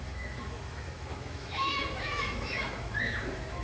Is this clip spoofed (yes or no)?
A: yes